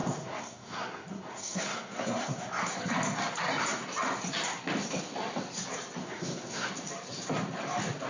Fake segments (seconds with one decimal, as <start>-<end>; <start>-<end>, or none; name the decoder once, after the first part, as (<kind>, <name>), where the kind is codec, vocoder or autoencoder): 0.0-2.7 (codec, SNAC); 6.0-6.7